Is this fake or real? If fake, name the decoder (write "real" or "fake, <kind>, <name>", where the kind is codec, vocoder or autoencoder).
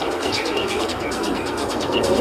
fake, codec, SNAC